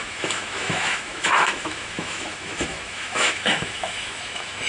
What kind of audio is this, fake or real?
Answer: fake